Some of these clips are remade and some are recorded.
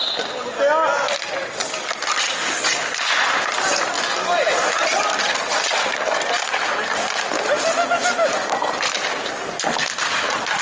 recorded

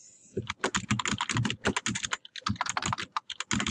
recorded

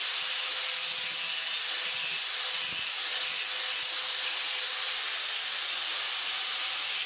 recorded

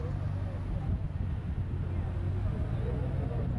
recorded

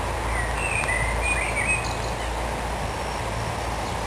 recorded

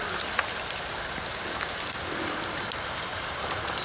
recorded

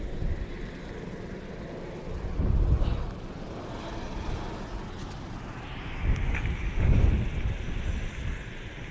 recorded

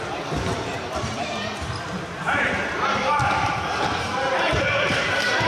remade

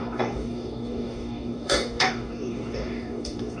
remade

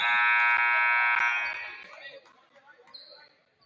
recorded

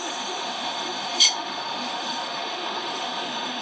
remade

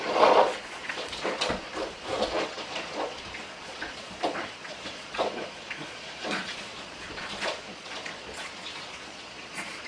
remade